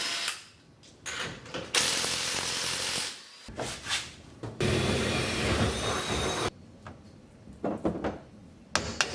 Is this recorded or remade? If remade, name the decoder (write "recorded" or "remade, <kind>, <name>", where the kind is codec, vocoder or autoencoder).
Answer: recorded